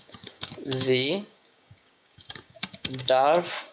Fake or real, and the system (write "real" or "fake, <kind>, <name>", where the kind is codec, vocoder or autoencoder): fake, codec, DAC